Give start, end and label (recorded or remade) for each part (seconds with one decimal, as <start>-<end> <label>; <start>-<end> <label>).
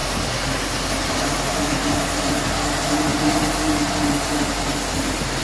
0.0-5.4 recorded